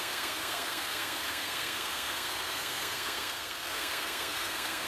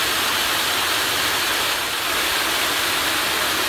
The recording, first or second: second